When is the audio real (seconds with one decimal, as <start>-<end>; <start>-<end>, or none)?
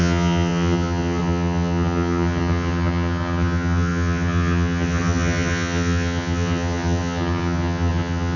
none